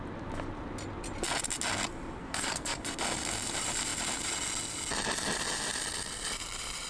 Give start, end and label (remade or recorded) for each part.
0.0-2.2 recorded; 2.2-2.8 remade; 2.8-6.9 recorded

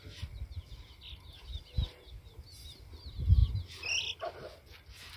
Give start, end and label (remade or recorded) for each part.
0.0-5.2 recorded

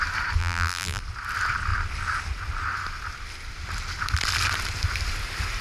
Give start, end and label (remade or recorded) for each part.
0.0-0.4 recorded; 0.4-1.0 remade; 1.0-5.6 recorded